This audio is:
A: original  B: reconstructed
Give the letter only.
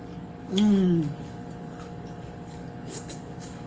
B